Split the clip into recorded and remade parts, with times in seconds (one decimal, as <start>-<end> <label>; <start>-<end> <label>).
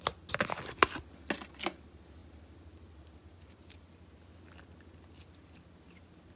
0.0-6.4 recorded